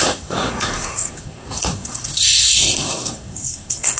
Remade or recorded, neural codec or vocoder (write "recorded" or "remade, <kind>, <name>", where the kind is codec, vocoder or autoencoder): remade, codec, SNAC